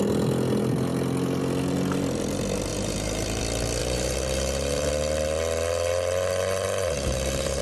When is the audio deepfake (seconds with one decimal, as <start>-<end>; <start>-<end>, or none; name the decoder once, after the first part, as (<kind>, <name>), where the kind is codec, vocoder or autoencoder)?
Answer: 2.7-3.4 (vocoder, BigVGAN v2); 3.8-4.9; 6.8-7.6